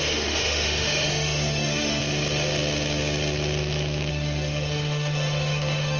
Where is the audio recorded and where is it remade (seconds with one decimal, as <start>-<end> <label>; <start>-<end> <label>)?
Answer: 0.0-2.0 remade; 2.0-4.1 recorded; 4.1-6.0 remade